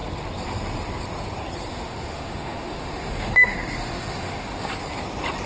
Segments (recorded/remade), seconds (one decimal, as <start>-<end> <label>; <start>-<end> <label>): 0.0-1.7 recorded; 1.7-4.7 remade; 4.7-5.5 recorded